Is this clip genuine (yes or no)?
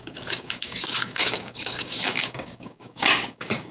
no